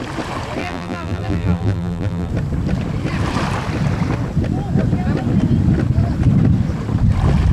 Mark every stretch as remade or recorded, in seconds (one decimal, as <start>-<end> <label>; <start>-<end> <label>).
0.0-0.6 recorded; 0.6-2.3 remade; 2.3-7.5 recorded